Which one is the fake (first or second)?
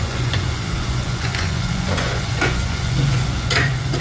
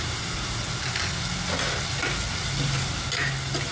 first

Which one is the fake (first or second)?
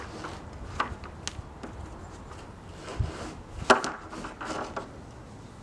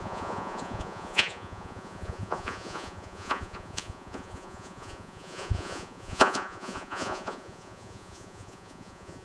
second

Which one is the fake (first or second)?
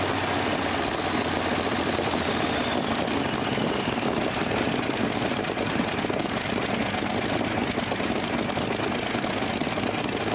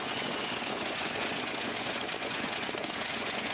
second